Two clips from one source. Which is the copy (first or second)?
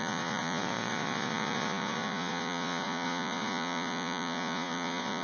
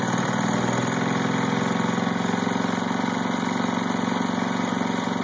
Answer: first